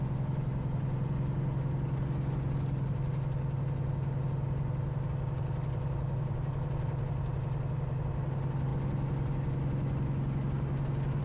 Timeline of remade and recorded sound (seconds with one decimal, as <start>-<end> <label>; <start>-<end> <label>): 0.0-11.2 recorded